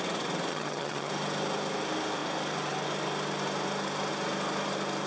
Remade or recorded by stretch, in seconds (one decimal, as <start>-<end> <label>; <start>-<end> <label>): 0.0-0.5 recorded; 0.5-1.1 remade; 1.1-5.1 recorded